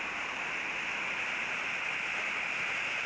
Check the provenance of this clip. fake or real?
real